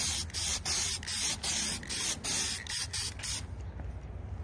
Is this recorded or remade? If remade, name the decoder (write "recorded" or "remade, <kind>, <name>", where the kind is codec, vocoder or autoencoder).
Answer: recorded